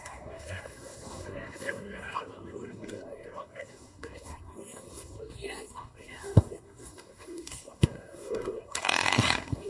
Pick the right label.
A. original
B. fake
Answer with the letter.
B